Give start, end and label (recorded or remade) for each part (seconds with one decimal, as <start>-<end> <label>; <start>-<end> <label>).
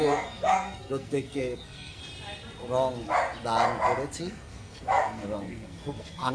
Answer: 0.0-2.0 remade; 2.0-4.2 recorded; 4.2-6.3 remade